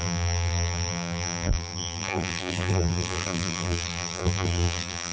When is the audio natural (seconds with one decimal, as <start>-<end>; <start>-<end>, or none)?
none